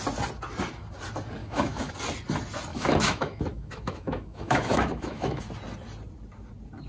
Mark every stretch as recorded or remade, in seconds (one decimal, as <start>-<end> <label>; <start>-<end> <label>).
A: 0.0-1.4 recorded; 1.4-1.9 remade; 1.9-2.7 recorded; 2.7-5.4 remade; 5.4-6.9 recorded